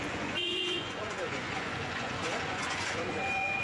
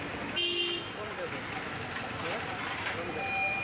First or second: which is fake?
first